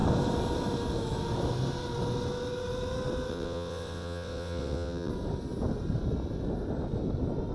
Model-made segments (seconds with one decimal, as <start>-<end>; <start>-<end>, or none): 3.3-5.1